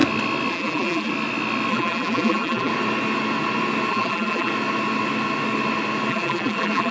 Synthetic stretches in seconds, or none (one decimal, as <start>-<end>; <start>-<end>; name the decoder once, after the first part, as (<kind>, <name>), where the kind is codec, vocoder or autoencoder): 0.5-1.1 (vocoder, BigVGAN v2); 1.7-2.7; 3.9-4.5; 6.1-6.9